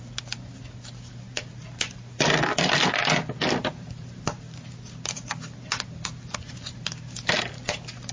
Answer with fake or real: real